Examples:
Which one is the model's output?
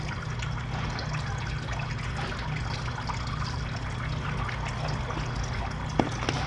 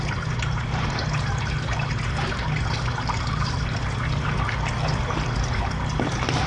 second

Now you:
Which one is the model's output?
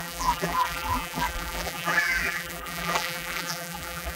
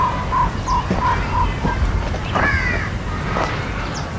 first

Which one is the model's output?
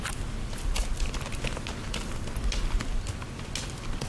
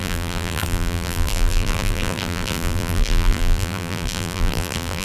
second